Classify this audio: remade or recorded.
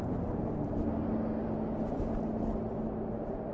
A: recorded